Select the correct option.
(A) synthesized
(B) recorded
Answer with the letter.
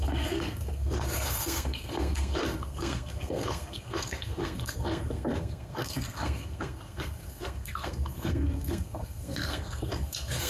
A